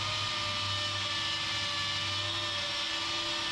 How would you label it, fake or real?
real